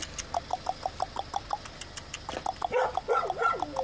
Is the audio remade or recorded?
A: recorded